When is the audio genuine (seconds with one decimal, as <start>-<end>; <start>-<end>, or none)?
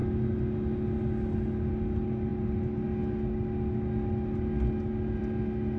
0.0-5.8